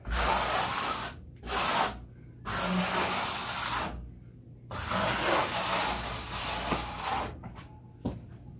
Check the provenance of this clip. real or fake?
real